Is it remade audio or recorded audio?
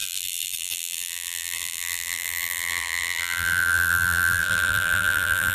remade